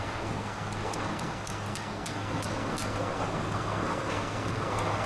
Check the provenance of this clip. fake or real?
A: fake